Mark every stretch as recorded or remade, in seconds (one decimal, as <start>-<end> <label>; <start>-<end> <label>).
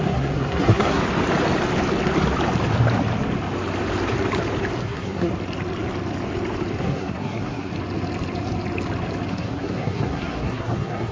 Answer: 0.0-1.0 remade; 1.0-4.8 recorded; 4.8-5.3 remade; 5.3-6.8 recorded; 6.8-7.7 remade; 7.7-9.3 recorded; 9.3-11.1 remade